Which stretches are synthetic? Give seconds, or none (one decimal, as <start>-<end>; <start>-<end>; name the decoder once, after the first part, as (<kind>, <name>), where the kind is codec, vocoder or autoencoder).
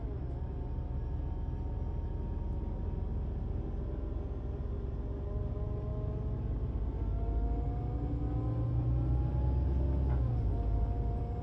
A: none